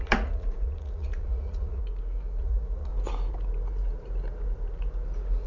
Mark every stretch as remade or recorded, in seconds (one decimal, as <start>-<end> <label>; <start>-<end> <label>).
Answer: 0.0-1.8 remade; 1.8-2.4 recorded; 2.4-2.9 remade; 2.9-5.5 recorded